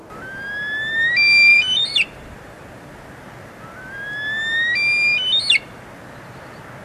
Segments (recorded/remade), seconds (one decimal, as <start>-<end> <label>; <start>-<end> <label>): 0.0-1.5 recorded; 1.5-2.9 remade; 2.9-6.8 recorded